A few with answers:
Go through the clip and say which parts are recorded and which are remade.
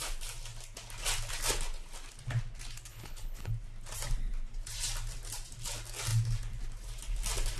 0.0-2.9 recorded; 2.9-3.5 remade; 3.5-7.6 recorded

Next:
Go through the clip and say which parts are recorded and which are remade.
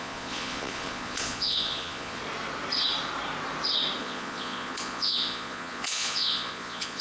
0.0-2.2 remade; 2.2-4.0 recorded; 4.0-7.0 remade